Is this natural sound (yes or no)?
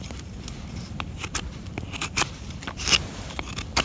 yes